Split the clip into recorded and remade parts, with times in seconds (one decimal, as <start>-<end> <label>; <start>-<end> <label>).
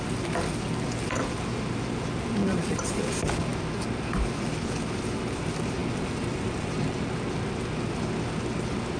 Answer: 0.0-2.4 recorded; 2.4-3.0 remade; 3.0-5.8 recorded; 5.8-7.1 remade; 7.1-9.0 recorded